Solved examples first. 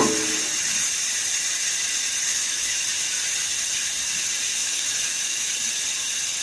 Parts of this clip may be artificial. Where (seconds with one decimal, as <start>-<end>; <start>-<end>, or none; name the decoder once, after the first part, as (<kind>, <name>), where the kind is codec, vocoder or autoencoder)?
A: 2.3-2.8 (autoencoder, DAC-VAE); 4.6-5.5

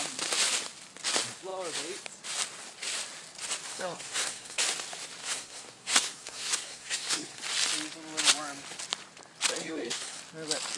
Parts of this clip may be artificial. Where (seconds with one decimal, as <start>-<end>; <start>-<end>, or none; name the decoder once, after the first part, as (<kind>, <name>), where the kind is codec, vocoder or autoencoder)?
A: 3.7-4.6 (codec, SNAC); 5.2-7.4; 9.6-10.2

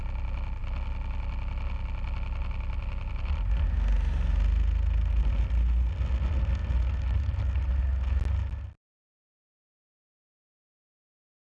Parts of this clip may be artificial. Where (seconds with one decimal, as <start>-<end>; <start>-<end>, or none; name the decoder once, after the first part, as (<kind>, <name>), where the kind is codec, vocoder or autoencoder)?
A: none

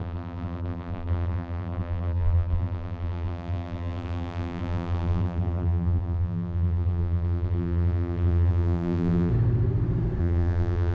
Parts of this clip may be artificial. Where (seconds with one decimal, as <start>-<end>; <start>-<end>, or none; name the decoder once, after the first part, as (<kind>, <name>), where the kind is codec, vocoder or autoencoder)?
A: 0.0-9.3 (vocoder, BigVGAN v2); 10.2-10.9

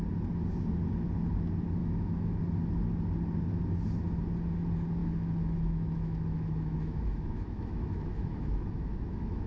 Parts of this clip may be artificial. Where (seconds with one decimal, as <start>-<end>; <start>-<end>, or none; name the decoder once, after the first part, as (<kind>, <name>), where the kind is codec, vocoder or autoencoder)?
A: 1.8-2.4 (autoencoder, DAC-VAE); 5.0-9.5

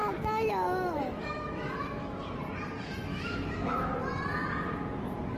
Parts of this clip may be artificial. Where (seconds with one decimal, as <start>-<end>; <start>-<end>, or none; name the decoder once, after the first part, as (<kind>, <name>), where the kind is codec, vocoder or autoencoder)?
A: 0.0-2.2 (autoencoder, DAC-VAE); 3.1-4.0

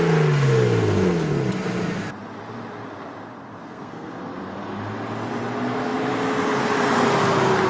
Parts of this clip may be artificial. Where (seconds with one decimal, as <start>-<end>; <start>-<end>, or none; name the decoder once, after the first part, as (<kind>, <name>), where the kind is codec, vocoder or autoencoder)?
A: 3.6-4.1 (codec, SNAC)